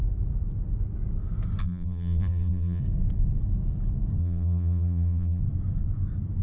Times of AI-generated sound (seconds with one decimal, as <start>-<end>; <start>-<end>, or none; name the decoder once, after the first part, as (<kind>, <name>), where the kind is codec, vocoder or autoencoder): 1.6-2.8 (vocoder, BigVGAN v2); 4.2-5.4